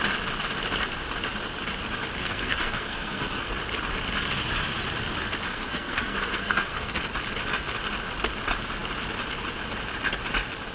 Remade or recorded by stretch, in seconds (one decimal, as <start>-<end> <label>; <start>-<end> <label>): 0.0-2.2 recorded; 2.2-3.5 remade; 3.5-5.5 recorded; 5.5-7.0 remade; 7.0-10.7 recorded